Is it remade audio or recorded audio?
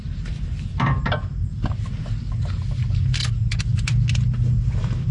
recorded